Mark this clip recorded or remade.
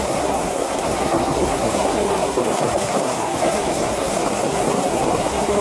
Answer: remade